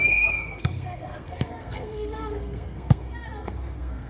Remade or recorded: remade